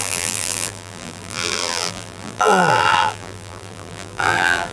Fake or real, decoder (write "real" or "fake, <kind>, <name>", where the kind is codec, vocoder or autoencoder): fake, vocoder, BigVGAN v2